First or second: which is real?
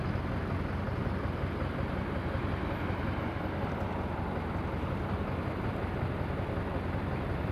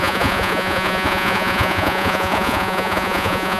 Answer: first